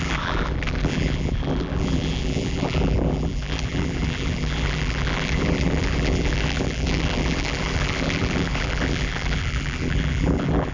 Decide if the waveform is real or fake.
fake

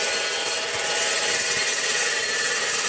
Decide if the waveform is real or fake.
fake